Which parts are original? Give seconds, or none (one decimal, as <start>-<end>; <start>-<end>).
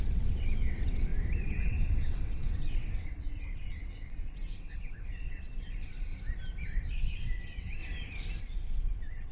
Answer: 6.1-6.9; 7.8-8.4